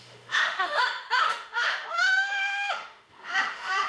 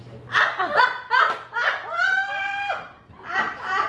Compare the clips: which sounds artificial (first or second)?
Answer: first